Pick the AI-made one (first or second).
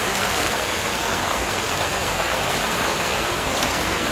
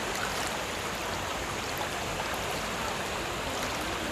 first